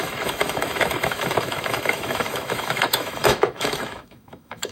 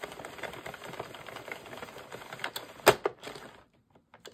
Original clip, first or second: second